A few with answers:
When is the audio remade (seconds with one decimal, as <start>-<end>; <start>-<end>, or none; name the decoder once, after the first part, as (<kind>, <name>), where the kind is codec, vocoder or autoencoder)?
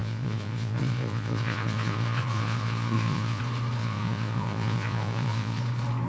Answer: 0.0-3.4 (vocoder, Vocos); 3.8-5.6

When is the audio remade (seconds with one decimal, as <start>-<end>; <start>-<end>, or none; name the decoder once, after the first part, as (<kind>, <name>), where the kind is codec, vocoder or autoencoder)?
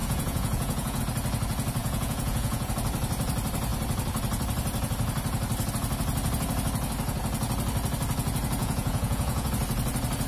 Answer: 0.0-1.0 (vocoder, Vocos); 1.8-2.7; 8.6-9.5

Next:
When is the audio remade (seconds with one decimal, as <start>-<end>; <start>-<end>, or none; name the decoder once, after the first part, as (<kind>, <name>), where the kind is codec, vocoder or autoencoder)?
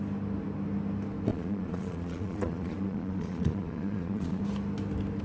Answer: 1.3-4.4 (vocoder, Vocos)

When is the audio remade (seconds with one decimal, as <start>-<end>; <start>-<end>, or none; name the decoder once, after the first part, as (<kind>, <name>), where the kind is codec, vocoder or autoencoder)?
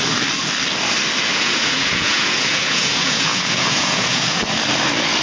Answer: 1.3-4.4 (vocoder, Vocos)